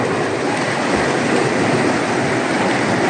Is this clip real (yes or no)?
yes